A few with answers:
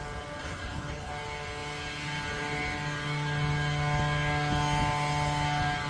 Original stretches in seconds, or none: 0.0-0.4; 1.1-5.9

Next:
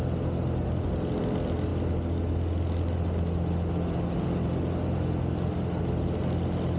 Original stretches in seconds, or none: 0.0-6.8

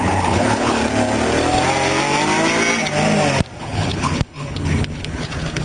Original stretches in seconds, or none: 0.8-3.6

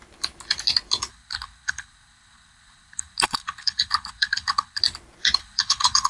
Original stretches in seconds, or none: 0.0-1.1; 4.8-5.4

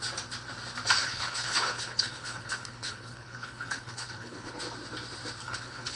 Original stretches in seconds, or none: 0.0-1.0; 4.6-5.4